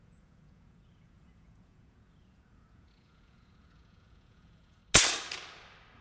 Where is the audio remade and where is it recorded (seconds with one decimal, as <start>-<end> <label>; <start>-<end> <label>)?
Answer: 0.0-4.8 remade; 4.8-6.0 recorded